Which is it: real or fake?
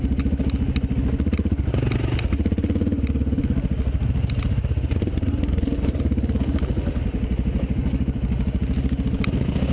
real